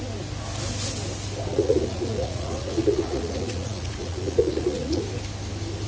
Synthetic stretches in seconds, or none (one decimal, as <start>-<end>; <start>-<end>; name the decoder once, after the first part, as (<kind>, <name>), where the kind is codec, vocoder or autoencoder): 1.5-5.0 (vocoder, Vocos)